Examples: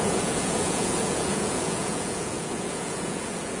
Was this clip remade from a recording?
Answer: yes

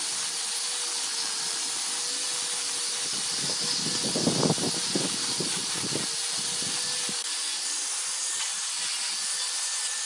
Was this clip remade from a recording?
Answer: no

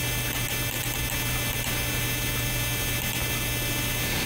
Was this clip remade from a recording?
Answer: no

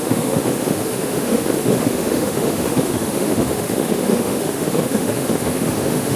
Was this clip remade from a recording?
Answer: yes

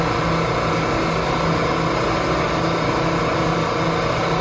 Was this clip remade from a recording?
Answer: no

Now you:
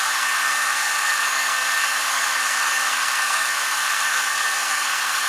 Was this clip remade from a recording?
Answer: yes